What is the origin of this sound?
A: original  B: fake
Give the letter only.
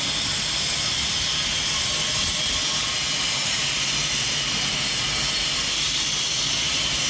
A